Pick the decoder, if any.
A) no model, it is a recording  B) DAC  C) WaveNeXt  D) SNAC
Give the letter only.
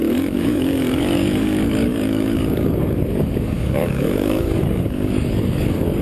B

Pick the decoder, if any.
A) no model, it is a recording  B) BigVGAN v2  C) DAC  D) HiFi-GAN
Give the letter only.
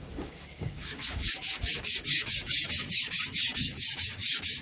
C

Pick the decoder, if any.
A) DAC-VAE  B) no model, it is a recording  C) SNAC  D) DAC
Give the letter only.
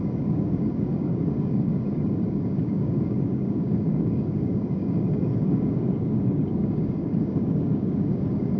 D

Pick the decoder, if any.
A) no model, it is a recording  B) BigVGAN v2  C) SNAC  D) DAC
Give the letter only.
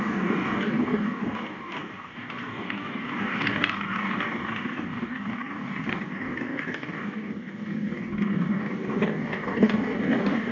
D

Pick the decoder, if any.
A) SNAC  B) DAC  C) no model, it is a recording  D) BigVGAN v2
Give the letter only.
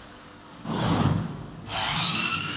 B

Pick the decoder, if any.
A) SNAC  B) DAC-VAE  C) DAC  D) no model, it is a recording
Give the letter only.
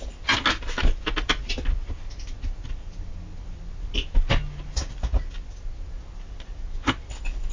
D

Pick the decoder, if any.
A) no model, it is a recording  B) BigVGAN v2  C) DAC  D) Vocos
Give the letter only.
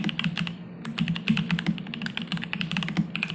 A